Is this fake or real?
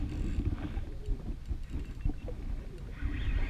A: real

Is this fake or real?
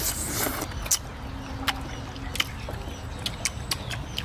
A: real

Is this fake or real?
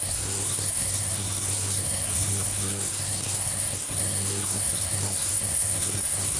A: fake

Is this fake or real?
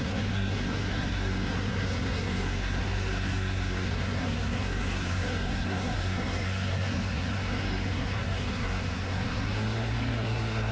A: fake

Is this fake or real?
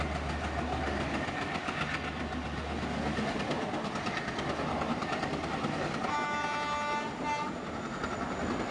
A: real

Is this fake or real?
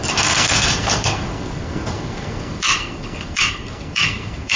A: fake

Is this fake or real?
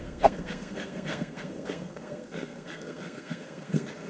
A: fake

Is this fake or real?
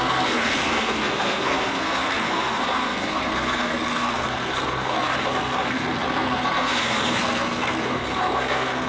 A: fake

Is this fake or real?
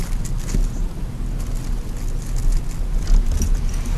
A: real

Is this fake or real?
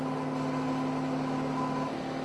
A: real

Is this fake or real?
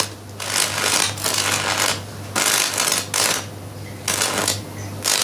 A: real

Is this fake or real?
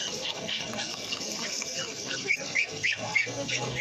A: fake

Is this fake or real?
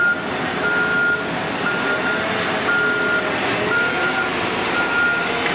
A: real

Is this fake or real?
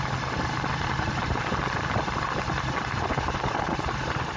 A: real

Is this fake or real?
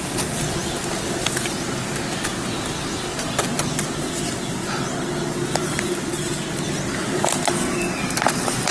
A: real